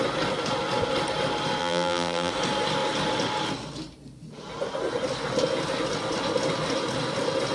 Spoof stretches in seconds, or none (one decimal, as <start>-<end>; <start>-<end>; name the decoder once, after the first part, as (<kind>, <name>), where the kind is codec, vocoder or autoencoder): 1.6-2.3 (vocoder, BigVGAN v2)